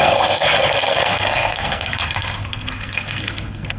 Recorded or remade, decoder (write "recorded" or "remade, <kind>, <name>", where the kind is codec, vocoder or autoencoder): remade, codec, SNAC